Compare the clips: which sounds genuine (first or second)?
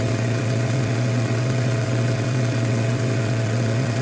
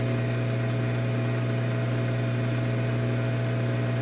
second